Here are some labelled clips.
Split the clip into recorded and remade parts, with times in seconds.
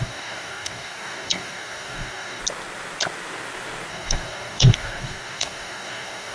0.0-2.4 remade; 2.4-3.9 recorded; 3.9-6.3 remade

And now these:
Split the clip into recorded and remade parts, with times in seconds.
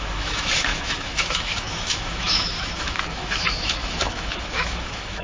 0.0-5.2 remade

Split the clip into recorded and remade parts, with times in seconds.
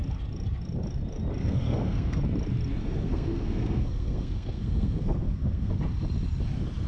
0.0-1.4 recorded; 1.4-2.2 remade; 2.2-2.8 recorded; 2.8-5.7 remade; 5.7-6.9 recorded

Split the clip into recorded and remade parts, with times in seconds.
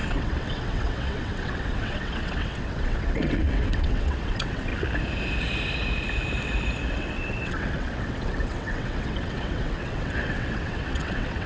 0.0-4.7 remade; 4.7-7.0 recorded; 7.0-11.5 remade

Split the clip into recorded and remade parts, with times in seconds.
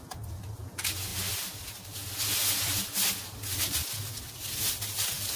0.0-5.4 recorded